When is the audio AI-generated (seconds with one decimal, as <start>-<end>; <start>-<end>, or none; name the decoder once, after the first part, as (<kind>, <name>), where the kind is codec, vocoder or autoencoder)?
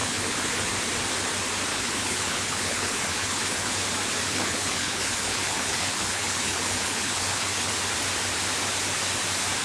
0.0-0.7 (codec, HILCodec); 1.7-3.7; 4.2-7.7